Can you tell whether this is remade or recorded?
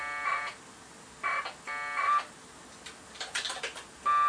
recorded